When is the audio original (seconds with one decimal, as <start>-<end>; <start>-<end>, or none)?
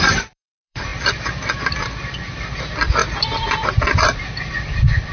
0.9-2.4; 3.0-4.5